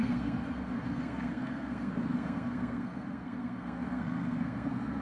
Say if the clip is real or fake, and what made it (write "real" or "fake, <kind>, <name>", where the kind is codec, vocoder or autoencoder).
fake, codec, SNAC